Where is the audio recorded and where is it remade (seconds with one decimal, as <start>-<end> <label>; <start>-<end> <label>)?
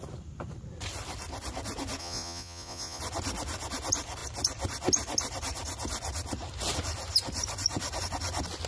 0.0-2.0 recorded; 2.0-3.0 remade; 3.0-8.7 recorded